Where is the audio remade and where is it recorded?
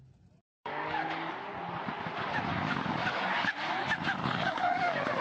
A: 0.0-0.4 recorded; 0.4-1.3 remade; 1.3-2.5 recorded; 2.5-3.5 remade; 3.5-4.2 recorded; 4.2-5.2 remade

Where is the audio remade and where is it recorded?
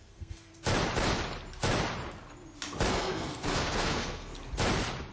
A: 0.0-0.5 remade; 0.5-2.9 recorded; 2.9-4.3 remade; 4.3-5.1 recorded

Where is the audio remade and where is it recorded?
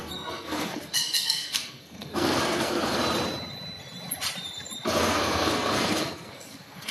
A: 0.0-3.0 remade; 3.0-5.0 recorded; 5.0-6.9 remade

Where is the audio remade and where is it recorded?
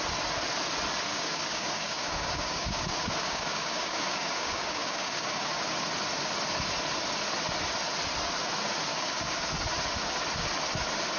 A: 0.0-1.1 recorded; 1.1-5.6 remade; 5.6-8.9 recorded; 8.9-9.4 remade; 9.4-11.2 recorded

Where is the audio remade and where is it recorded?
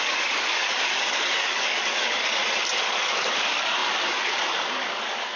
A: 0.0-2.4 remade; 2.4-3.0 recorded; 3.0-5.4 remade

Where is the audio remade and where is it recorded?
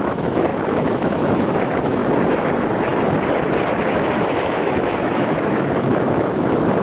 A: 0.0-2.0 remade; 2.0-3.8 recorded; 3.8-6.8 remade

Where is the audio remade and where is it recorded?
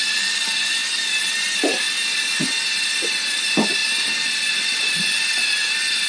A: 0.0-6.1 recorded